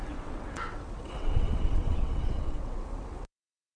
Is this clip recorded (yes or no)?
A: no